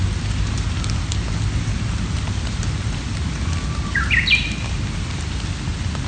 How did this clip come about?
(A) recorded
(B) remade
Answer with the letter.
A